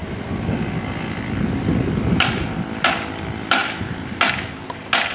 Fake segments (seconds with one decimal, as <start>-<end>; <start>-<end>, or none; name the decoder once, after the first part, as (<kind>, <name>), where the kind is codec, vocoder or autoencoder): none